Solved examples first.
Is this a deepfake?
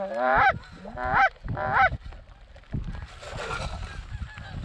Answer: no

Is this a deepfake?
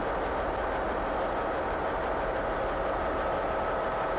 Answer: no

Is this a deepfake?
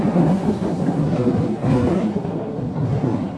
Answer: yes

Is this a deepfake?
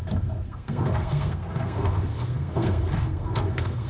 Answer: yes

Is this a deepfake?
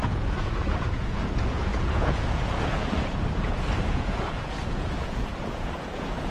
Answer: yes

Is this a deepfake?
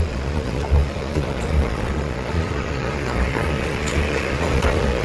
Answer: yes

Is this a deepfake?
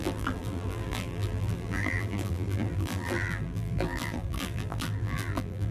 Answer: yes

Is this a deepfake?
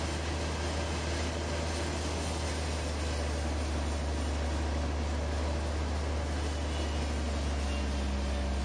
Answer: no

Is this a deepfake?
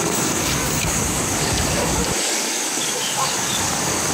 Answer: yes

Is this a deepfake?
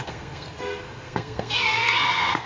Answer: yes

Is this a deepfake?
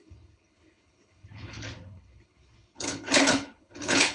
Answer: yes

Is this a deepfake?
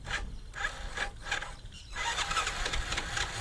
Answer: no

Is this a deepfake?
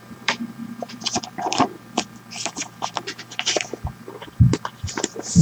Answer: yes